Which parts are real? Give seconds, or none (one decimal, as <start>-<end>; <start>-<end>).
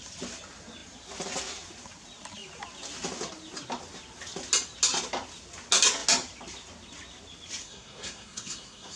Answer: 0.0-7.6